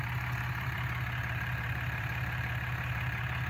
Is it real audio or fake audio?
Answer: fake